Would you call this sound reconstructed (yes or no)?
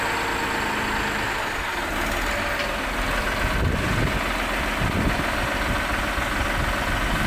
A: no